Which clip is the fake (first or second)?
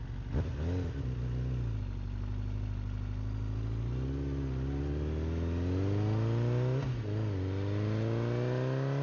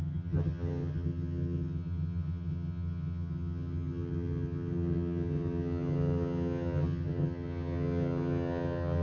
second